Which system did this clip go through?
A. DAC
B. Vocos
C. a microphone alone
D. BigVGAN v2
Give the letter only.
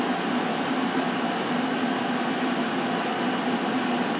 C